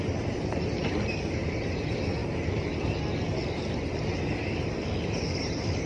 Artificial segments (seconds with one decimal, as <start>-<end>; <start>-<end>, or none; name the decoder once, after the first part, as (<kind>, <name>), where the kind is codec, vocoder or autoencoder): none